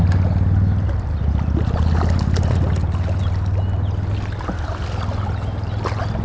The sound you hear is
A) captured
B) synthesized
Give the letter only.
A